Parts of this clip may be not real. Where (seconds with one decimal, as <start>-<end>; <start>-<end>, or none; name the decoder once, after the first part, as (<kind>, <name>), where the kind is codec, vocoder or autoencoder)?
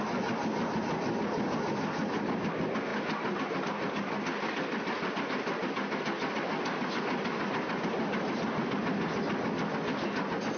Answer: none